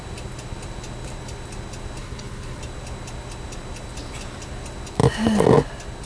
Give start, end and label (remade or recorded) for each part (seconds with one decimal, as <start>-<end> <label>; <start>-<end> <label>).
0.0-2.0 recorded; 2.0-2.6 remade; 2.6-6.1 recorded